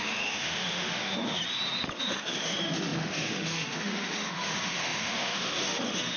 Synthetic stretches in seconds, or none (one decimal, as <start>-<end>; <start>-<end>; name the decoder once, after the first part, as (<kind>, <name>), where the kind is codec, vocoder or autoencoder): 0.0-1.4 (autoencoder, DAC-VAE); 2.0-6.2